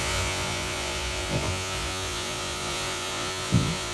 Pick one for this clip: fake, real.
fake